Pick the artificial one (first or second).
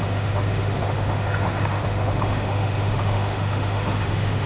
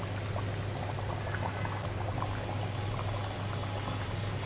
first